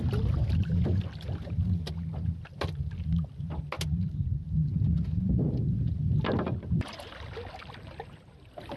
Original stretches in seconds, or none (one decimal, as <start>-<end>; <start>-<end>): 0.0-8.8